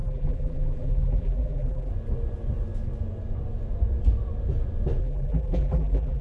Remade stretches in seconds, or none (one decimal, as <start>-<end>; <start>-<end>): 0.0-1.9; 5.0-6.2